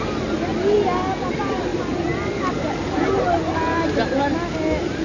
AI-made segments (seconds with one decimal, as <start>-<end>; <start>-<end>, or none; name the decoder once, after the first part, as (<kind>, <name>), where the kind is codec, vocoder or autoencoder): none